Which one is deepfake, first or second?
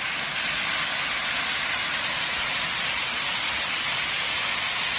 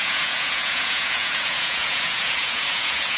second